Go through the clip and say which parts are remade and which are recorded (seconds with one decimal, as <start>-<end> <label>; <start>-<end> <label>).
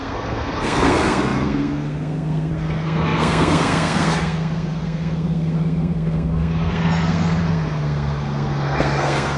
0.0-9.4 remade